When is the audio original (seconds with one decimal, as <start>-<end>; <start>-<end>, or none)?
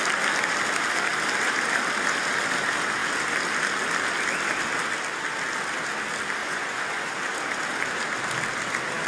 0.0-6.4; 7.1-9.1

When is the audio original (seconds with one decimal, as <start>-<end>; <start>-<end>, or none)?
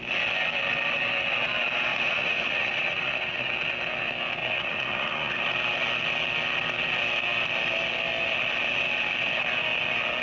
0.0-1.9; 3.5-4.4; 5.4-10.2